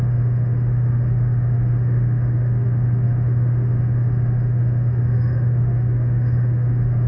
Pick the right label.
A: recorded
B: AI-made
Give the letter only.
B